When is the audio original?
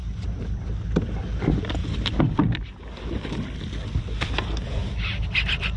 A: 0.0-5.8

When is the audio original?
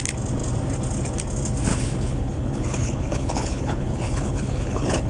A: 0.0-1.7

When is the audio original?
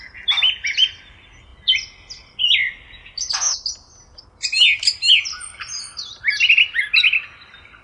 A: 0.0-7.8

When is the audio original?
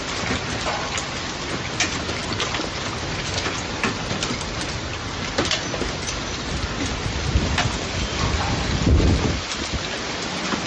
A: 0.0-10.7